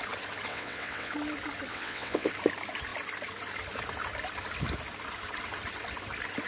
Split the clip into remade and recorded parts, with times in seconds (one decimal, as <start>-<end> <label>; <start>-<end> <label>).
0.0-0.5 recorded; 0.5-1.1 remade; 1.1-1.7 recorded; 1.7-2.3 remade; 2.3-6.5 recorded